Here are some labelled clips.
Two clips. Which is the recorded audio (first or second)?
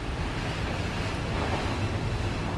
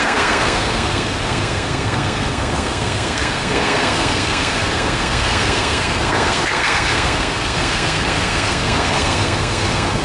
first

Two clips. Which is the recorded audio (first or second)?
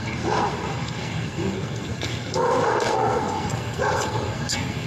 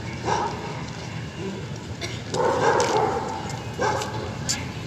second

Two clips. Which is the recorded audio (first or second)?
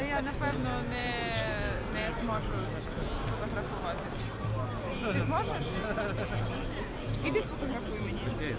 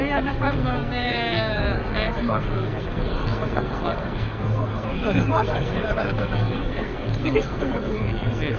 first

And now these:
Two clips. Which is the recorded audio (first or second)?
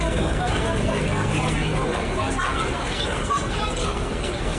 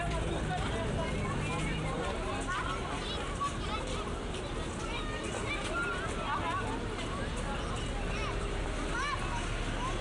second